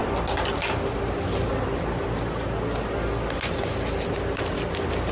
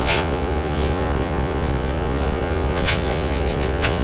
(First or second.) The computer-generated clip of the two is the second